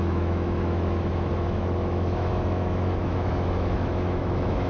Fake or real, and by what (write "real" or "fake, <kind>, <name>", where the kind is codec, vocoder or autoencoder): fake, autoencoder, DAC-VAE